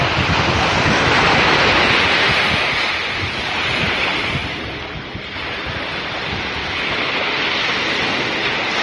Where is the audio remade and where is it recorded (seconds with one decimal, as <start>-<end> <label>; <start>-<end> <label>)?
0.0-8.8 recorded